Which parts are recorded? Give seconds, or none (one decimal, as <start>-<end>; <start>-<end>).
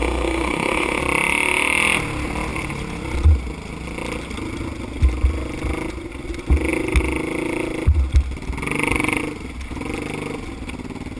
1.0-11.2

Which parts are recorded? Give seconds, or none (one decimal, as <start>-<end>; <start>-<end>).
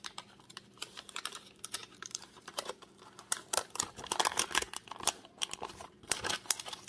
none